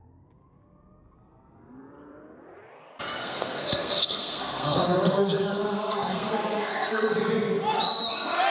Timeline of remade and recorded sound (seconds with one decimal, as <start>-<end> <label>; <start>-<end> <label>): 0.0-3.2 recorded; 3.2-7.3 remade; 7.3-8.5 recorded

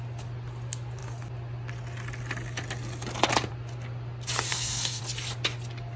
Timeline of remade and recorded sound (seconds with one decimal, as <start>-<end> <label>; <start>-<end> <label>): 0.0-4.5 recorded; 4.5-5.0 remade; 5.0-6.0 recorded

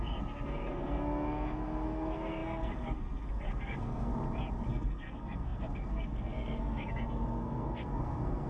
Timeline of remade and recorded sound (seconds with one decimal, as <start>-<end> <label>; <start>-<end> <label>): 0.0-4.1 remade; 4.1-4.7 recorded; 4.7-8.5 remade

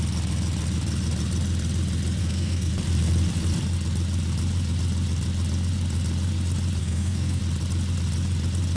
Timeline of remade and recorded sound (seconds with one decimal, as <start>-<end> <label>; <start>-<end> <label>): 0.0-2.2 recorded; 2.2-2.7 remade; 2.7-6.8 recorded; 6.8-7.4 remade; 7.4-8.8 recorded

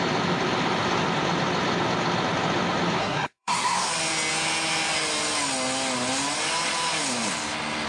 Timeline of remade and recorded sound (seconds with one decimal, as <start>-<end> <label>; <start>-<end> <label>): 0.0-3.0 recorded; 3.0-3.9 remade; 3.9-7.9 recorded

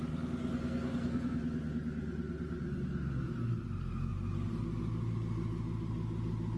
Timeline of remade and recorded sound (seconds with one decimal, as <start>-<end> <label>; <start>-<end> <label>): 0.0-0.4 recorded; 0.4-1.4 remade; 1.4-6.6 recorded

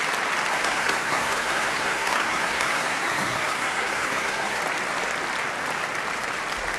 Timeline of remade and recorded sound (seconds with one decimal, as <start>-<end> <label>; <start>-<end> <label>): 0.0-0.5 recorded; 0.5-4.6 remade; 4.6-6.8 recorded

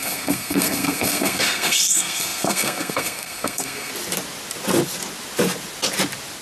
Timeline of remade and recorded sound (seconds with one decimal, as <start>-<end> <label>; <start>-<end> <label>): 0.0-3.9 remade; 3.9-6.4 recorded